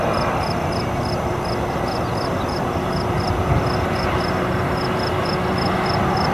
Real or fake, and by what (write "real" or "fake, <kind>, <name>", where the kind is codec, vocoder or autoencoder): real